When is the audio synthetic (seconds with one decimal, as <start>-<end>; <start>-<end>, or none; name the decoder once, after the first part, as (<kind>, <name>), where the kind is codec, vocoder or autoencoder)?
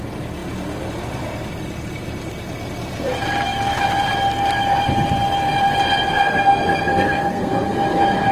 6.1-7.7 (codec, SNAC)